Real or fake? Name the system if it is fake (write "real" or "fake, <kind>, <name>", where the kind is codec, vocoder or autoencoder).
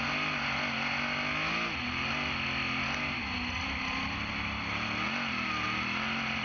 real